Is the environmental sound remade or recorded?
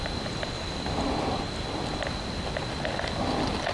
recorded